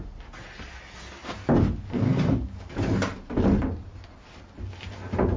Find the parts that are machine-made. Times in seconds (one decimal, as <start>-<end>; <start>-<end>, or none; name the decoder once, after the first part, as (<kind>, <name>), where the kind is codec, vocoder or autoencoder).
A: none